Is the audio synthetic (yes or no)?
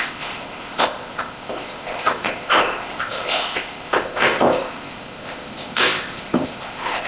yes